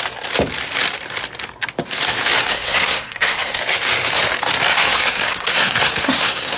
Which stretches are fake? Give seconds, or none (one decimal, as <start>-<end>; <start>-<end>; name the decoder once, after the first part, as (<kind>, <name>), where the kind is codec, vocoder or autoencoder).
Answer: 2.5-3.6 (codec, SNAC); 4.7-6.6